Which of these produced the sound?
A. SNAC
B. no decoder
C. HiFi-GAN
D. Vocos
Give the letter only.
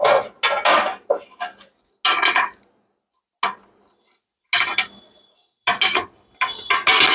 B